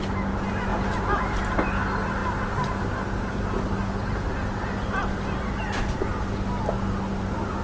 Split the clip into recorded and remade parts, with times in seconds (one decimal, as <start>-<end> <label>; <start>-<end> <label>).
0.0-7.6 recorded